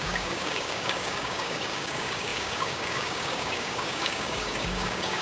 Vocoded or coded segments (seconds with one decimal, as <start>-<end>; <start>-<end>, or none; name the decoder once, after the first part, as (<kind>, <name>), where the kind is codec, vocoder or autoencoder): 0.0-5.2 (codec, DAC)